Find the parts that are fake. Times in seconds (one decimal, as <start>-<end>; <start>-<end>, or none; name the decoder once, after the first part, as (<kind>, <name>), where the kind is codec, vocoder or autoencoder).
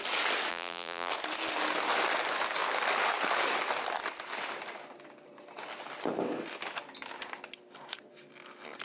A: 0.5-1.1 (vocoder, BigVGAN v2)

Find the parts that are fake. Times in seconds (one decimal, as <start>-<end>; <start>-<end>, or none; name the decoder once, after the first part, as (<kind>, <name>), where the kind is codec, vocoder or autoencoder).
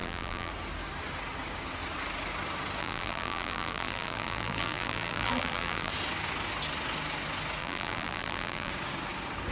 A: 0.0-0.5 (vocoder, BigVGAN v2); 2.8-5.9; 7.6-8.7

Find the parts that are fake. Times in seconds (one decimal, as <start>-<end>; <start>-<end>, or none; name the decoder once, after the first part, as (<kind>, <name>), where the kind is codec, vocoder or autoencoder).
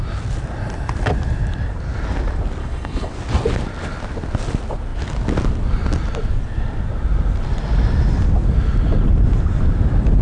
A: 2.6-3.1 (codec, HILCodec)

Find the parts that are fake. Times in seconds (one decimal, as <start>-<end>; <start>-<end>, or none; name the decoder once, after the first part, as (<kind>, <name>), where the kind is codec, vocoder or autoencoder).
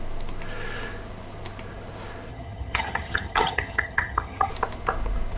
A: 2.3-4.5 (vocoder, HiFi-GAN)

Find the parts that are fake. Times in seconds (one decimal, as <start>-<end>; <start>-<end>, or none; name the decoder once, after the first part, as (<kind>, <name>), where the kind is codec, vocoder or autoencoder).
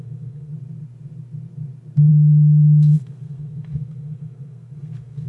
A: 0.0-0.5 (codec, SNAC); 2.1-5.3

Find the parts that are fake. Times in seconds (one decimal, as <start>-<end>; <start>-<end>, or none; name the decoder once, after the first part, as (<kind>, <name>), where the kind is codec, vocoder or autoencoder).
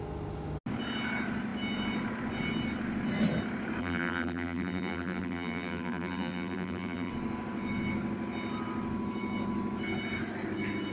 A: 3.8-7.1 (vocoder, BigVGAN v2)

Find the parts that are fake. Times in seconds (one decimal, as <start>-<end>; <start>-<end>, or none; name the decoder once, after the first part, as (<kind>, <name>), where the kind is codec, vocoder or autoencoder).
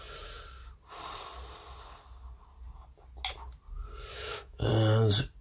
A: 4.1-4.7 (autoencoder, DAC-VAE)